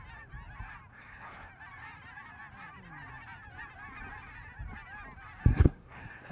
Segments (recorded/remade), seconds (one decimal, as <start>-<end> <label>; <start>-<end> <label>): 0.0-0.9 recorded; 0.9-1.5 remade; 1.5-5.5 recorded; 5.5-6.3 remade